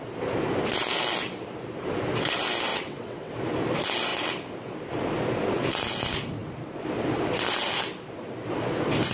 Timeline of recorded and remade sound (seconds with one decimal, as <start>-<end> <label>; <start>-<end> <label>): 0.0-2.7 recorded; 2.7-3.3 remade; 3.3-9.1 recorded